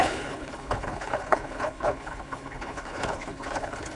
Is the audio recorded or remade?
remade